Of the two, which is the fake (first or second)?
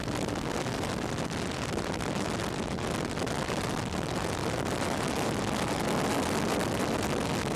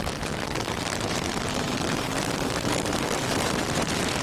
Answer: second